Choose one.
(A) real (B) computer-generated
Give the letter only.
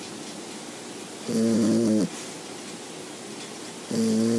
A